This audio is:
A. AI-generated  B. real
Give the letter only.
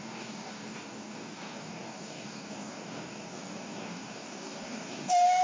A